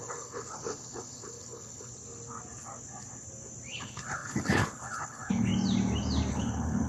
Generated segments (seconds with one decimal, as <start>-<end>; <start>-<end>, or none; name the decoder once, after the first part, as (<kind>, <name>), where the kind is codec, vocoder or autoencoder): 0.0-1.9 (codec, HILCodec); 3.7-5.5; 6.3-6.9